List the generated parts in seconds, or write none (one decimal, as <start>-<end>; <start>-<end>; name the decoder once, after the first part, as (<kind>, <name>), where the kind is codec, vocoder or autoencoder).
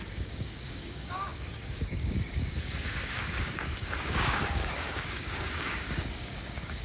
0.0-6.8 (codec, DAC)